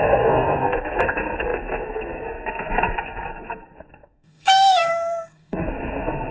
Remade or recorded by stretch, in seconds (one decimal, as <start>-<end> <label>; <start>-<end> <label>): 0.0-6.3 remade

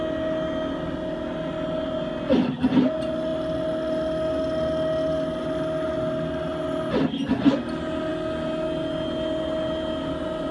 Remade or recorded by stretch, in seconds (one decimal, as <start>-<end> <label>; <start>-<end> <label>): 0.0-10.5 recorded